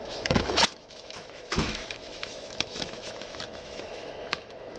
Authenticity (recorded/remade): remade